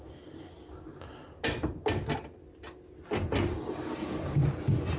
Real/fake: real